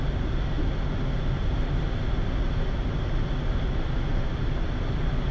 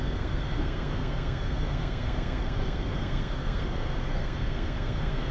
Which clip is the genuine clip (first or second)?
first